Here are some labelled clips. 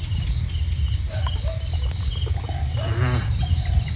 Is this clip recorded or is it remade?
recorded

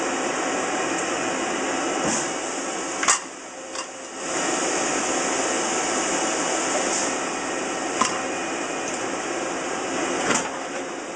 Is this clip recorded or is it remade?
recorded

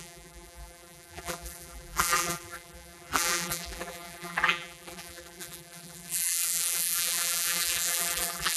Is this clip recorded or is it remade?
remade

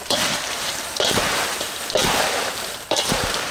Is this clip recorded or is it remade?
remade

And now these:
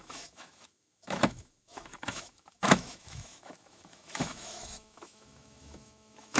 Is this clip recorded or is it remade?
remade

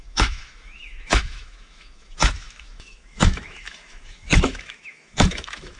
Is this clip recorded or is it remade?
remade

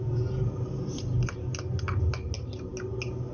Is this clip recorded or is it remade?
recorded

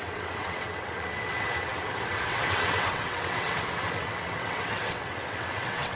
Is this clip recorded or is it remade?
remade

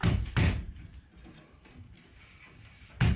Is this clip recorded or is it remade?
recorded